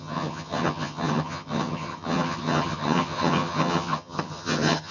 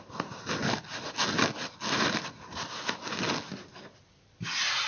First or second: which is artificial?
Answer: first